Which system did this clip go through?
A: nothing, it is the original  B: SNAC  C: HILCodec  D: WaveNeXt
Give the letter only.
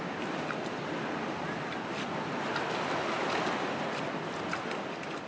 A